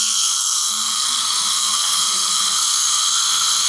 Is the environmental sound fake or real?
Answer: fake